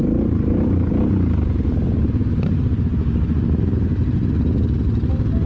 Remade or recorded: recorded